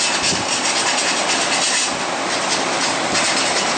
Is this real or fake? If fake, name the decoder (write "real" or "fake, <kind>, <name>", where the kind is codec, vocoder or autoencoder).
real